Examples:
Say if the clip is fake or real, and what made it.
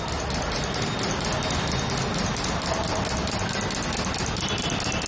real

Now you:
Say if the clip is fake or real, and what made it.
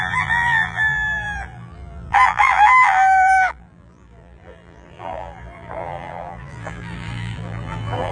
fake, vocoder, BigVGAN v2